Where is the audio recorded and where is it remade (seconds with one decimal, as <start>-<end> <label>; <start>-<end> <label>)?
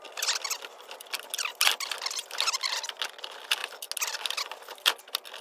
0.0-5.4 recorded